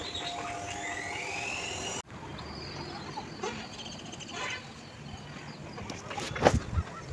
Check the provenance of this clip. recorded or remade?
recorded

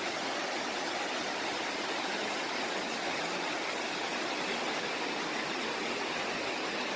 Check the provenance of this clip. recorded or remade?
recorded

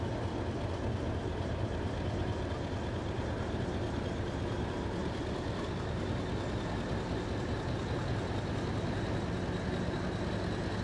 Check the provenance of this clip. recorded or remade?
recorded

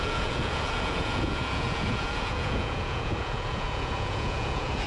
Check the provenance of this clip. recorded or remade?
remade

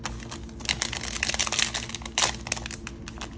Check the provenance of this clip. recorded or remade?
recorded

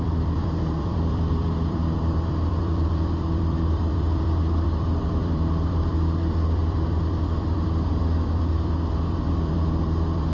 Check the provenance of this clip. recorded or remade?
remade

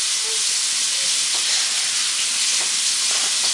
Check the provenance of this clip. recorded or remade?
recorded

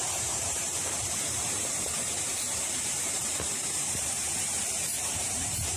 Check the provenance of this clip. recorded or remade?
remade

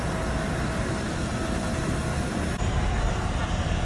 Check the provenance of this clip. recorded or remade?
recorded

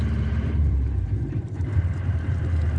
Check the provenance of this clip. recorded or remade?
remade